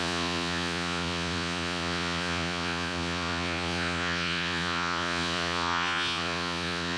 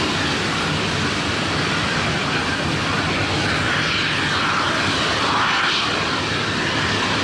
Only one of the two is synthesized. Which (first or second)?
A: first